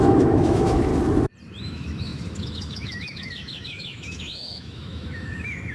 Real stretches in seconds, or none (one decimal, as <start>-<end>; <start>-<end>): 0.9-1.6